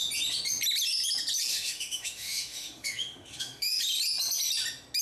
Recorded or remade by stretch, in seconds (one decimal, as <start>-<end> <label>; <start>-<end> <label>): 0.0-1.5 recorded; 1.5-3.8 remade; 3.8-5.0 recorded